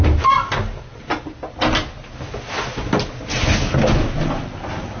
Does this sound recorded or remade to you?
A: recorded